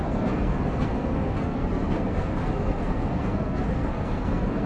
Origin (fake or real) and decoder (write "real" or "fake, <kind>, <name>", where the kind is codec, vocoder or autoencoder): fake, codec, SNAC